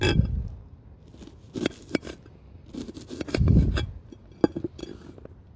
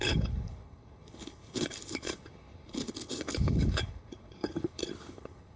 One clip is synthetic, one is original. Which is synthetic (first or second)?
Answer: second